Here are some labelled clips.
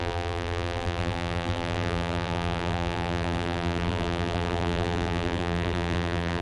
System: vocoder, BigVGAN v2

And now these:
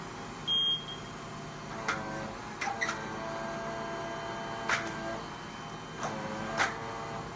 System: none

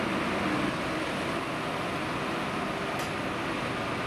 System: none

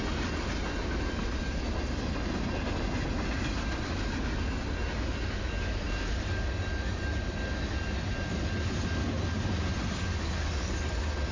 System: none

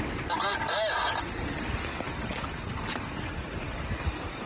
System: none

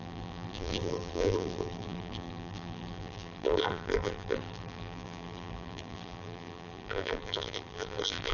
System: vocoder, BigVGAN v2